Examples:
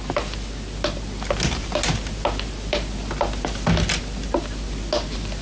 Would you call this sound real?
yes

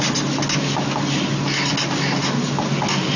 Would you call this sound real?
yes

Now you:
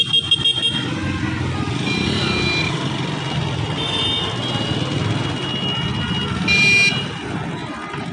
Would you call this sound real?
yes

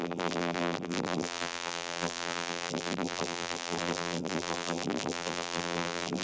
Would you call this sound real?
no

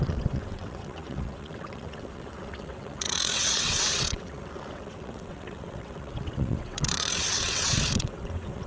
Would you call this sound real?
no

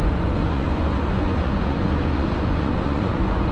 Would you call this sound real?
no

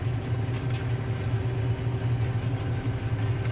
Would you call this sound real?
yes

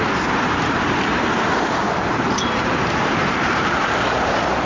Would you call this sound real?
no